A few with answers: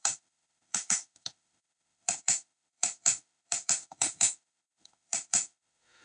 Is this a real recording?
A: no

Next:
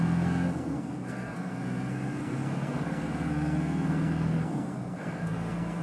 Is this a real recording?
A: no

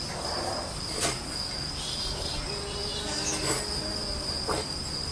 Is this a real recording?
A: yes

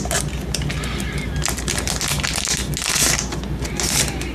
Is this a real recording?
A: yes